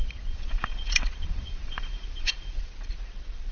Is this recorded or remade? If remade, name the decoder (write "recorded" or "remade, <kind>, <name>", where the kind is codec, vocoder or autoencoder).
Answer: remade, vocoder, Vocos